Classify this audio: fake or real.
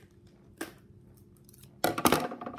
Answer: real